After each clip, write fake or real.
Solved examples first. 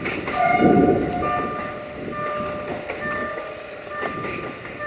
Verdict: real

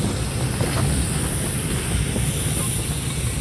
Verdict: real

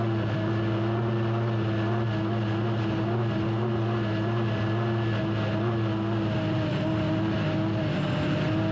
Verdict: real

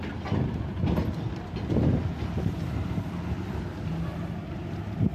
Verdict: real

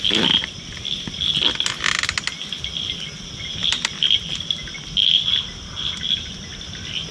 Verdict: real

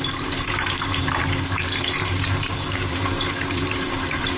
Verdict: fake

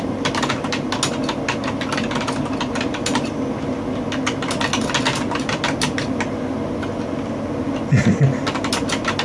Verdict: real